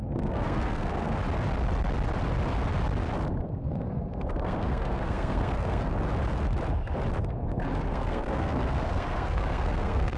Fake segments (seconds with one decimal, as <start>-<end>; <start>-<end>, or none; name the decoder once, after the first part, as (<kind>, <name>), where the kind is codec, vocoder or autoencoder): 0.0-1.2 (codec, SNAC); 3.4-5.9; 7.2-10.2